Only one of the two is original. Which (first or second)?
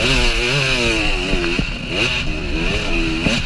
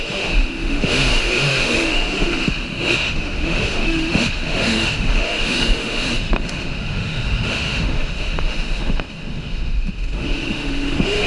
first